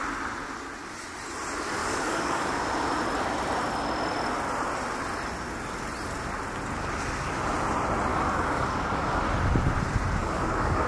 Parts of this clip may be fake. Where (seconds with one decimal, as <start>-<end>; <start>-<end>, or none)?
1.8-2.6; 8.1-9.2; 10.2-10.9